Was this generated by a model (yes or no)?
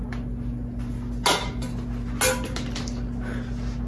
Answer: no